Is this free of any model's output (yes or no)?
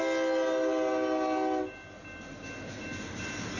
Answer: yes